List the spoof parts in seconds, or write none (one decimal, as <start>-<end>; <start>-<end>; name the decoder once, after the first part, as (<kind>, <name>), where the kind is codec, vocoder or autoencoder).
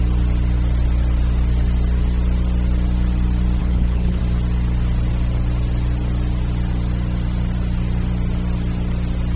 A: 3.6-4.2 (codec, HILCodec)